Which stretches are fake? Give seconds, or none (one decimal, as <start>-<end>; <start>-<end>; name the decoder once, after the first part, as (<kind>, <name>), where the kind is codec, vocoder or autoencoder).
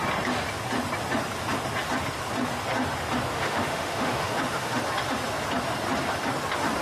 3.3-4.8 (autoencoder, DAC-VAE)